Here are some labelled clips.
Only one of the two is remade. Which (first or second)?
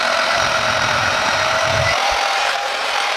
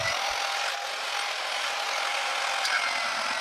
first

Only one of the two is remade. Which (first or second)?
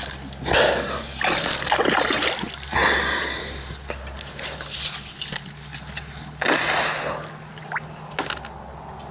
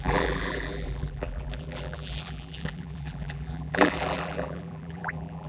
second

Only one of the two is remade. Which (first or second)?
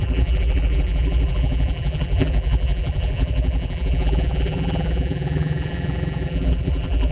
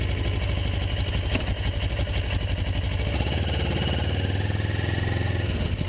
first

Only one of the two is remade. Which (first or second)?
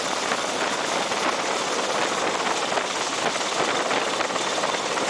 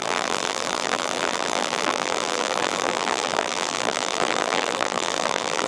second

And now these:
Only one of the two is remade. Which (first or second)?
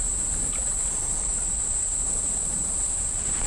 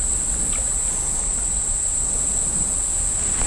first